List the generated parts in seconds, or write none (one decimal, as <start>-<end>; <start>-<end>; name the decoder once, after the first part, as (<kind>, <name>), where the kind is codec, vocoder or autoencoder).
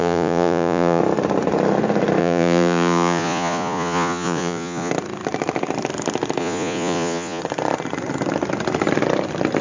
0.0-1.0 (vocoder, Vocos); 2.2-4.9; 6.4-7.4